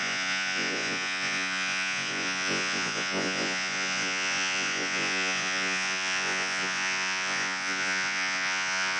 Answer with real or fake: fake